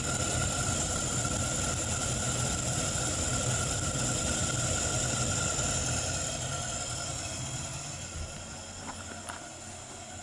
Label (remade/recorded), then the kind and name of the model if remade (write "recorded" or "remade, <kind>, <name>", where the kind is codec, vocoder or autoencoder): recorded